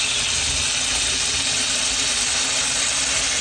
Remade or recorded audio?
recorded